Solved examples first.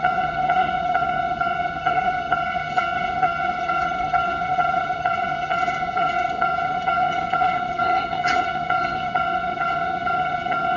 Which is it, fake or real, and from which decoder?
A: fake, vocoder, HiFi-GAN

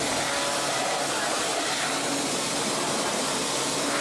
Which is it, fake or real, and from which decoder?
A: real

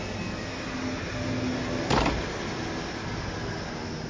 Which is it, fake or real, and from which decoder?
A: real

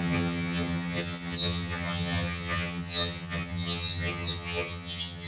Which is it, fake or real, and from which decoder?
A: fake, vocoder, HiFi-GAN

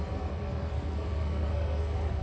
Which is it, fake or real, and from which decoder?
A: fake, codec, SNAC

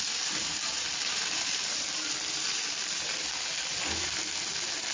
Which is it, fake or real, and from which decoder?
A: real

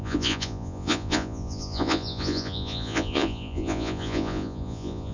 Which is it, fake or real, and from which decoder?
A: fake, vocoder, Vocos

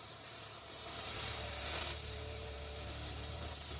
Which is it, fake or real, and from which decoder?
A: fake, vocoder, BigVGAN v2